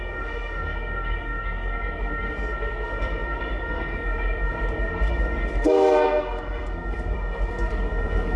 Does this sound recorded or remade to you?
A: remade